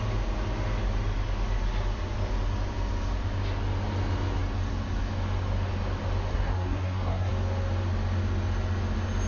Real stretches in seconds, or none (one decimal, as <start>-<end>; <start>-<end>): 0.0-6.3; 7.3-9.3